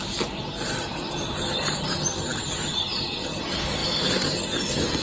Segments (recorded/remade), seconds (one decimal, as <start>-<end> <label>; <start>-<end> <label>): 0.0-5.0 recorded